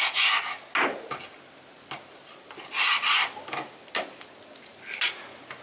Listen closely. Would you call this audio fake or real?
real